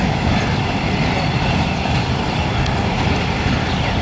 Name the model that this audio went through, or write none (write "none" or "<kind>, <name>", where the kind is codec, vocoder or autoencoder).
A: none